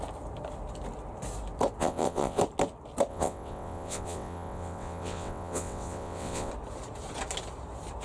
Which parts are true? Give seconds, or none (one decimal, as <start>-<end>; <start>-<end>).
0.0-1.8; 2.4-3.1; 6.5-8.0